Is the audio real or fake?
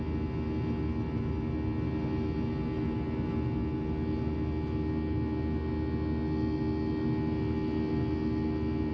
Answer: real